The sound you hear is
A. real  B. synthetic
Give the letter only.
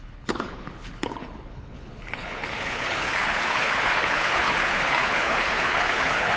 B